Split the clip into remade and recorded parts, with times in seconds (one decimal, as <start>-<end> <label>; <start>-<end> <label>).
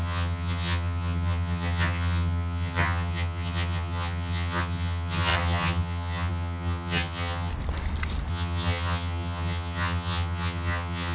0.0-7.5 remade; 7.5-8.3 recorded; 8.3-11.1 remade